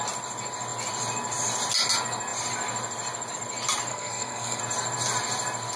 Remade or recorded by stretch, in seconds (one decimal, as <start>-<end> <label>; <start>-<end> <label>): 0.0-3.9 recorded; 3.9-4.6 remade; 4.6-5.8 recorded